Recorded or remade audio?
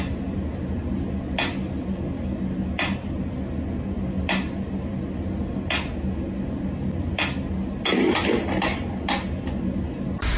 recorded